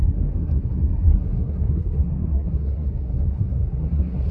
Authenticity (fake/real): fake